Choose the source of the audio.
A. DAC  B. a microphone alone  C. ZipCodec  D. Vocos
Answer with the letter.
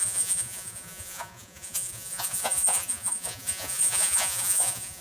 D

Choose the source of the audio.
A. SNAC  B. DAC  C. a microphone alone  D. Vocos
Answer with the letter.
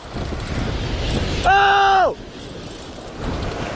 C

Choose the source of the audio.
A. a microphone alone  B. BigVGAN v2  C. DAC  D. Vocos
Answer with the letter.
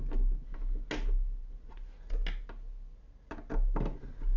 A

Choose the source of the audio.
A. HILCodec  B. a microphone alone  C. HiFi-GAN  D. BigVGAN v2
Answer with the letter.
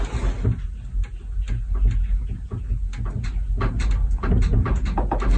B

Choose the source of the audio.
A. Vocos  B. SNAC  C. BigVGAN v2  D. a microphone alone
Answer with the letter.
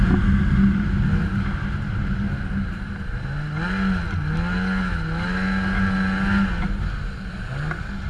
D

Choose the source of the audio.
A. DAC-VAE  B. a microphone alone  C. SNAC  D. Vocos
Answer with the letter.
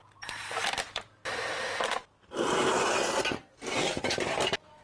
B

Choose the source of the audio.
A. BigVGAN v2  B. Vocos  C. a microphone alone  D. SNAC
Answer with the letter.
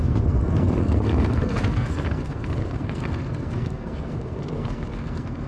D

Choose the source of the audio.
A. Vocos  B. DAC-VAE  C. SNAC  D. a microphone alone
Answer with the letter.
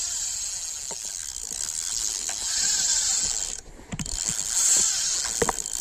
D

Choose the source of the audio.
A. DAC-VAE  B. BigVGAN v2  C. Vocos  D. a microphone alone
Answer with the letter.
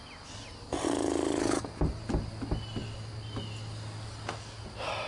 D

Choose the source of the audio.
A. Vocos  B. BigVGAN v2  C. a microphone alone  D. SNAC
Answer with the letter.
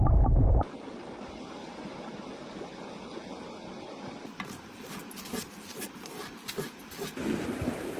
C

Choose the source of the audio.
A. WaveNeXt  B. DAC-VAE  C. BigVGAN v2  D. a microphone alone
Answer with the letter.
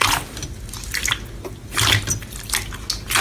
D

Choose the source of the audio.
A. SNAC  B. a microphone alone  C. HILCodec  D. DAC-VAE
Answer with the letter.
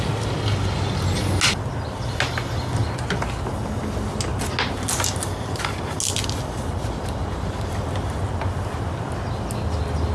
B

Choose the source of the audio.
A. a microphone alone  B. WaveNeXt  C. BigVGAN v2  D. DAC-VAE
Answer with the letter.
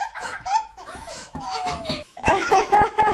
D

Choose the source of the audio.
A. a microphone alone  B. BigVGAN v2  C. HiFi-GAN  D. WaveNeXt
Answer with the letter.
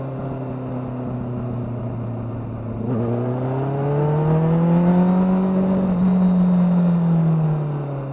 A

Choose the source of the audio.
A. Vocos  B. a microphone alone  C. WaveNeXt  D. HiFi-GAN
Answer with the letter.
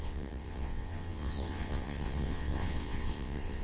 C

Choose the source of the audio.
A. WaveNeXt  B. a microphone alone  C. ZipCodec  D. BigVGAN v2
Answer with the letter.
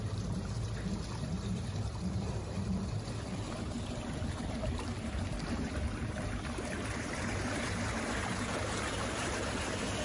D